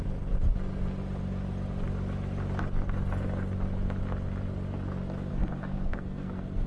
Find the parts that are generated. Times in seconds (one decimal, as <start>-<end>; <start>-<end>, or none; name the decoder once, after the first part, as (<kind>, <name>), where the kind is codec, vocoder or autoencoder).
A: 5.3-6.7 (codec, SNAC)